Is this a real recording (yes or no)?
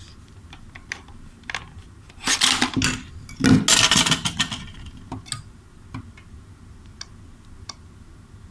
yes